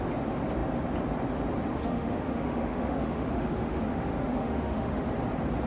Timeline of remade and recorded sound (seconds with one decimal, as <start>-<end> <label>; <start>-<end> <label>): 0.0-1.7 recorded; 1.7-5.1 remade; 5.1-5.7 recorded